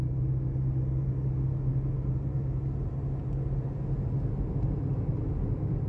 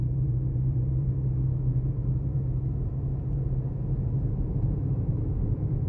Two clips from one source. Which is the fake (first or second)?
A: second